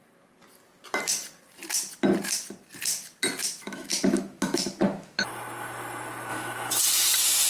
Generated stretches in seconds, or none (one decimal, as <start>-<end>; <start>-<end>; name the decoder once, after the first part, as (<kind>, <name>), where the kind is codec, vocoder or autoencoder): 3.4-5.3 (autoencoder, DAC-VAE); 6.3-6.8